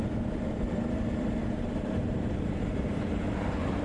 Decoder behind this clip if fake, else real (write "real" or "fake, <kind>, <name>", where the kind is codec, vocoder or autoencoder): fake, vocoder, BigVGAN v2